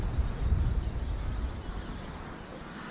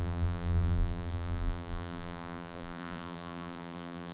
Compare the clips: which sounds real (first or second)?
first